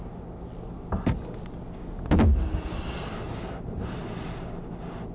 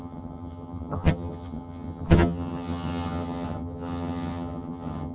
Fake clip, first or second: second